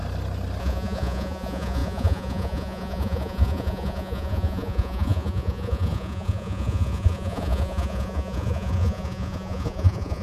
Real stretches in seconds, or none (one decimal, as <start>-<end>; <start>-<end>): 0.0-0.6